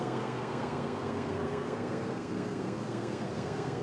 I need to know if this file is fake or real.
fake